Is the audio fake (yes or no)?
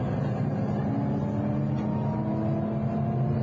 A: no